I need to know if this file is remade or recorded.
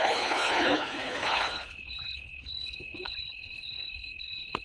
remade